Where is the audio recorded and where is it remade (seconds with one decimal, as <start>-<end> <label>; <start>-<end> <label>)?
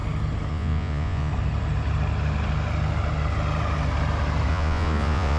0.0-0.5 recorded; 0.5-1.3 remade; 1.3-4.5 recorded; 4.5-5.4 remade